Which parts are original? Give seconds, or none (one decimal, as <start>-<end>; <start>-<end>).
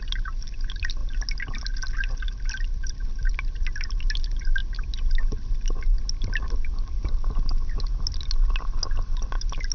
0.0-9.7